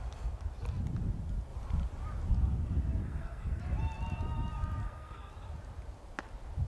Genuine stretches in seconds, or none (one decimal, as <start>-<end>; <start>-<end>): 0.0-3.0; 3.6-4.8; 5.3-6.7